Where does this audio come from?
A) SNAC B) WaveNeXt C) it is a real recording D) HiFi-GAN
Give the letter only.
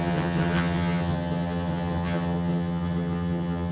D